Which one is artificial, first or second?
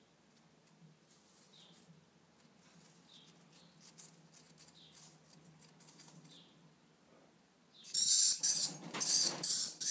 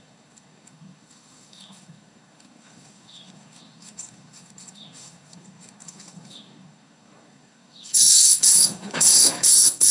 second